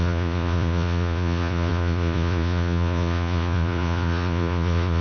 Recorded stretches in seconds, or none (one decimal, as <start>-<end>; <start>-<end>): none